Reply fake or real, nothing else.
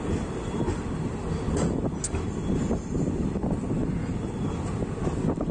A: real